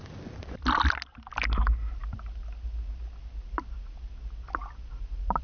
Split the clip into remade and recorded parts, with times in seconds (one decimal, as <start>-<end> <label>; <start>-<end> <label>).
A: 0.0-5.4 recorded